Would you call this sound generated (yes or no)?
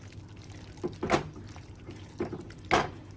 no